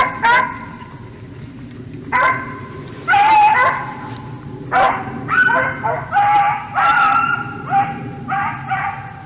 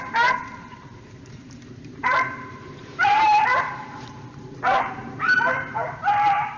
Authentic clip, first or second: first